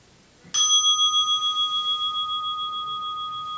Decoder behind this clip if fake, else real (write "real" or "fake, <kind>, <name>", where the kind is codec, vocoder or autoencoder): real